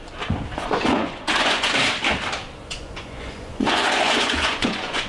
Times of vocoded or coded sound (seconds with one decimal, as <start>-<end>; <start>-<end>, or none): 0.5-1.7; 2.6-5.1

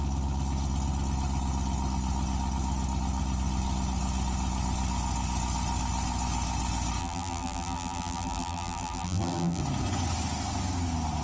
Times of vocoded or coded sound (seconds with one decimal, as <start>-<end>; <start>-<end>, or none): 7.0-9.6

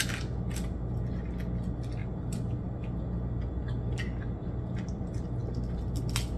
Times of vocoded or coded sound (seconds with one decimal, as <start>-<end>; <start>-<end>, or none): none

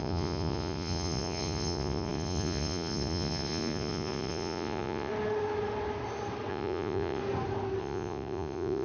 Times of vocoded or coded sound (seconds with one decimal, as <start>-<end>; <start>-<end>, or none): 0.0-5.1; 6.5-7.2; 7.8-8.8

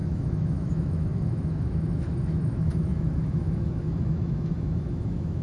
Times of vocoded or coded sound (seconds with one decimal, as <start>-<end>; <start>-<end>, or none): 0.0-5.4

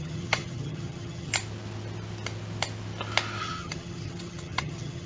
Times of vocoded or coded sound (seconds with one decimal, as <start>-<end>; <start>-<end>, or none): 0.0-1.3; 3.4-5.1

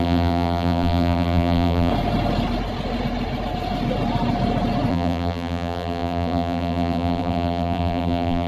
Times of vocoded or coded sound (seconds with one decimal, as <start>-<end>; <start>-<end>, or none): 0.0-1.9; 4.9-8.5

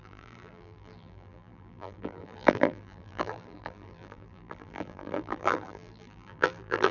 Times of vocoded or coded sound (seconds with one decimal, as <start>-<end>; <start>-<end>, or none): 0.0-6.9